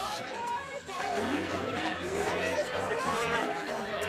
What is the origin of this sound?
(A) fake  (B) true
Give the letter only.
A